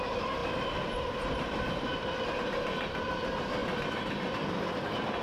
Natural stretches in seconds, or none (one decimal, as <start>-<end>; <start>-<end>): 0.0-5.2